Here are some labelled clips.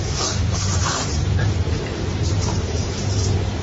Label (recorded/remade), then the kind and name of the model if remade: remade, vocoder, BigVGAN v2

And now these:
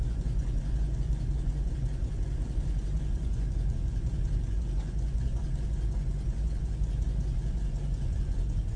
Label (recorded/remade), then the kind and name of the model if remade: remade, vocoder, Vocos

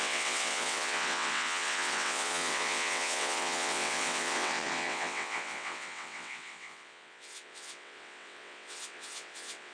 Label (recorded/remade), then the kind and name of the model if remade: remade, vocoder, WaveNeXt